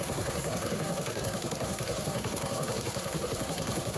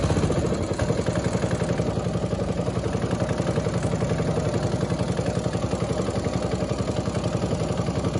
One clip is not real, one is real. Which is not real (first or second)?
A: first